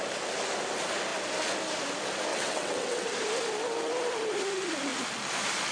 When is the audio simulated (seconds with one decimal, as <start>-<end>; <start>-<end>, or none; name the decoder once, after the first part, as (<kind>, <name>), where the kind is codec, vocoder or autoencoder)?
2.3-3.1 (vocoder, WaveNeXt)